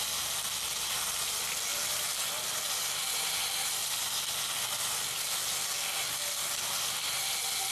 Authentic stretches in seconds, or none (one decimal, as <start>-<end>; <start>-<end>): 0.0-1.7; 2.6-7.7